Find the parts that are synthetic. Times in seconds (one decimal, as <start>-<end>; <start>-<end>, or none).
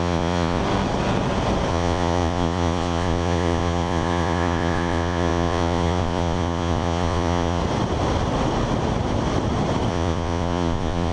0.0-0.6; 1.7-7.6; 9.9-11.1